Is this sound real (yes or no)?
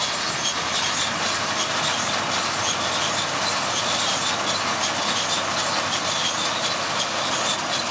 yes